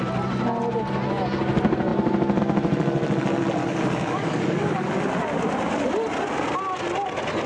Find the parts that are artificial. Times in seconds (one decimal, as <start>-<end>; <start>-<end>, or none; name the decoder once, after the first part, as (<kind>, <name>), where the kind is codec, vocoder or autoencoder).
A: 3.6-4.9 (codec, DAC)